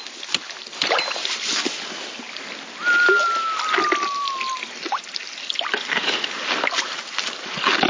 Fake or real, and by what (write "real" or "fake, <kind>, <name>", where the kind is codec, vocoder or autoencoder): real